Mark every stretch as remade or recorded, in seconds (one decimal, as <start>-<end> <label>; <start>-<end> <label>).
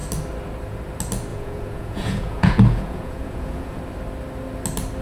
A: 0.0-1.3 recorded; 1.3-3.8 remade; 3.8-5.0 recorded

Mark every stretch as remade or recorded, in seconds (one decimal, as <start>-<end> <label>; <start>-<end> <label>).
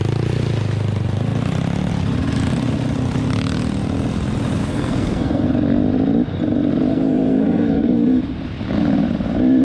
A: 0.0-4.6 recorded; 4.6-5.5 remade; 5.5-6.9 recorded; 6.9-8.2 remade; 8.2-9.6 recorded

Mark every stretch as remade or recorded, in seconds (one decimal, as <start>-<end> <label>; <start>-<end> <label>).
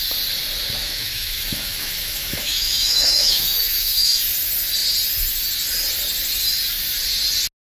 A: 0.0-0.8 recorded; 0.8-4.2 remade; 4.2-7.7 recorded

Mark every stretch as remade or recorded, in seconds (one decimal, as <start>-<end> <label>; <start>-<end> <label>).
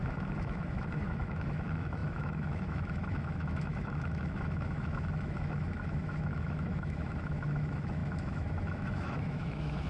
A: 0.0-9.9 remade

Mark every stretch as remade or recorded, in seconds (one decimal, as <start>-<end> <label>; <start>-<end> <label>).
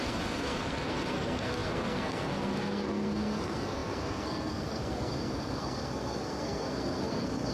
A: 0.0-7.5 remade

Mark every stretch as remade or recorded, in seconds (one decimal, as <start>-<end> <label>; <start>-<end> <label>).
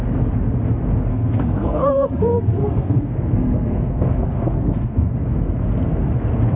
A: 0.0-1.1 recorded; 1.1-5.1 remade; 5.1-6.6 recorded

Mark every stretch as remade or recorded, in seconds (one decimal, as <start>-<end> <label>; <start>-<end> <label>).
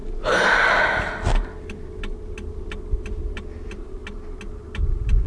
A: 0.0-5.3 recorded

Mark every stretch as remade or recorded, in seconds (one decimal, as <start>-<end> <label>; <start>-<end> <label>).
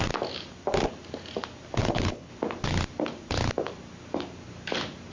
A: 0.0-1.8 recorded; 1.8-2.3 remade; 2.3-5.1 recorded